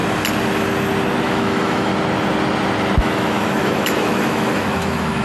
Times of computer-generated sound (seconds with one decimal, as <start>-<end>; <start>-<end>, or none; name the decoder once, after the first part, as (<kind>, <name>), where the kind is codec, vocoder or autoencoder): 1.2-1.9 (autoencoder, DAC-VAE); 3.0-5.2